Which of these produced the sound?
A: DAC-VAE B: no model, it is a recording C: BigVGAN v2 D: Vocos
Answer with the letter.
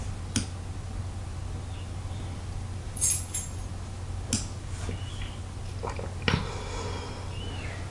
B